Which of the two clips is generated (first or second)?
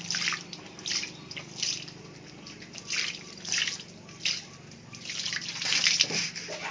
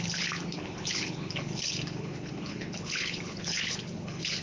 second